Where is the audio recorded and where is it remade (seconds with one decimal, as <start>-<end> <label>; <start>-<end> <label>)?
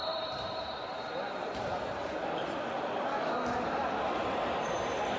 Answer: 0.0-3.1 remade; 3.1-4.7 recorded; 4.7-5.2 remade